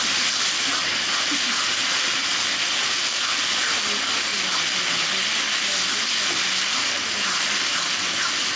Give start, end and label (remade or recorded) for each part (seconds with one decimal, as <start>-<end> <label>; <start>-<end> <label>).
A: 0.0-8.6 recorded